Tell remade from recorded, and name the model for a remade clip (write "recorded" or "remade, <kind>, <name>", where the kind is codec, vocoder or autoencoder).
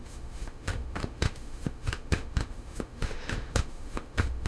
remade, autoencoder, DAC-VAE